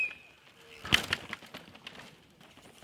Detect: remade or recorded recorded